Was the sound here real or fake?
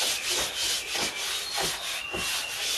real